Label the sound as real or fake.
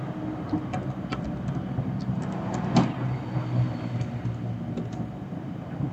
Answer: real